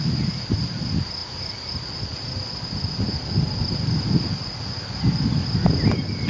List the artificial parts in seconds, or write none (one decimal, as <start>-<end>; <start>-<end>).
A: none